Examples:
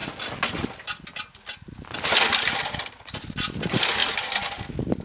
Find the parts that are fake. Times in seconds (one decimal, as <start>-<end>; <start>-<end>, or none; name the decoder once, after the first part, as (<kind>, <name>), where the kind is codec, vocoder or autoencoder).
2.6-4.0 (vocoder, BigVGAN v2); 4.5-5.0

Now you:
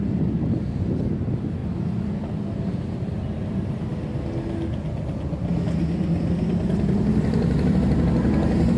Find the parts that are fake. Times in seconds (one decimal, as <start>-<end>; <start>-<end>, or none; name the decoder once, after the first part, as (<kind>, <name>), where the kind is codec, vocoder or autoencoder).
0.0-1.6 (vocoder, BigVGAN v2); 2.6-3.9; 5.8-8.8

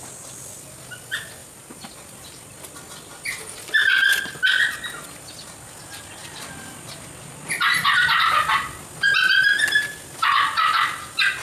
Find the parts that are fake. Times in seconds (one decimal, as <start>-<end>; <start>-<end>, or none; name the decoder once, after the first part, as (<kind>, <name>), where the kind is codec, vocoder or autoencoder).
1.4-4.4 (vocoder, BigVGAN v2); 6.2-8.8

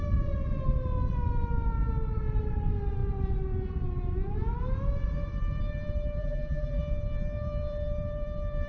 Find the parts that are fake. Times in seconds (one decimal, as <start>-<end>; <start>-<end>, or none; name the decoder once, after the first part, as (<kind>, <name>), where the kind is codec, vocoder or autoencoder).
6.2-6.8 (vocoder, BigVGAN v2)

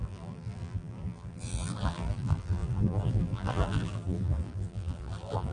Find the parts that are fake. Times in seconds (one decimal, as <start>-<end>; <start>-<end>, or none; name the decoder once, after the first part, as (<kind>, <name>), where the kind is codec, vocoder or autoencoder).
0.0-5.5 (vocoder, BigVGAN v2)

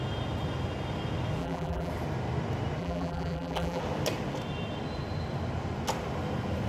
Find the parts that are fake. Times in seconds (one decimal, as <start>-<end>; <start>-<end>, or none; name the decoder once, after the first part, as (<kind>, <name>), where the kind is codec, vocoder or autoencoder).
1.4-1.9 (vocoder, BigVGAN v2); 2.8-3.8

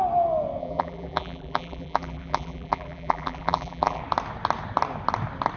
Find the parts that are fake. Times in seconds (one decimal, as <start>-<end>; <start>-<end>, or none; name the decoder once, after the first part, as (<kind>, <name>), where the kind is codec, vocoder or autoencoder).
0.6-4.0 (vocoder, BigVGAN v2)

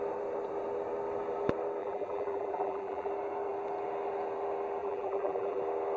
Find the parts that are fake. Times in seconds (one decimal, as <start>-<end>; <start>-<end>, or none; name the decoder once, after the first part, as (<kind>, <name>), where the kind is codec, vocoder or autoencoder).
1.8-3.1 (vocoder, BigVGAN v2); 4.8-5.6